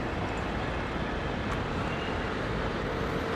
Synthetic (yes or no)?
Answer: no